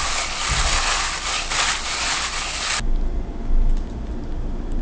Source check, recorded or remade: recorded